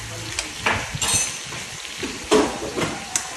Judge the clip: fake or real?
real